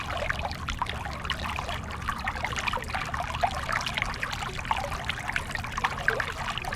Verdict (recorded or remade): recorded